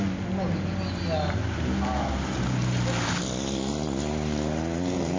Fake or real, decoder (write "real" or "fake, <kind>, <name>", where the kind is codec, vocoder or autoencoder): real